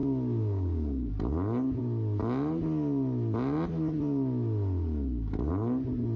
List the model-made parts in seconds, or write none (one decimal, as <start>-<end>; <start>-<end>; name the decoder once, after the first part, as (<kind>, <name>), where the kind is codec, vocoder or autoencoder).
0.0-1.1 (codec, DAC)